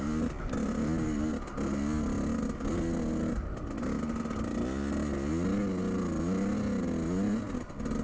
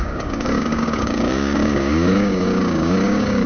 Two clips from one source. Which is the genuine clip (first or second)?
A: first